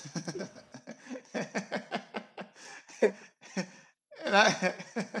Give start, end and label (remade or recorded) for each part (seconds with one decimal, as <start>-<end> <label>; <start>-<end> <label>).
0.0-5.2 remade